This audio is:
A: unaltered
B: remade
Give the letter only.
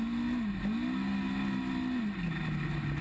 A